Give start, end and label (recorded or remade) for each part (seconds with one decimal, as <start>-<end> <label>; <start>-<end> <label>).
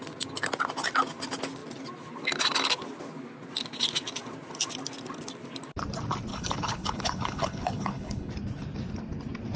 0.0-6.3 recorded; 6.3-8.3 remade; 8.3-9.6 recorded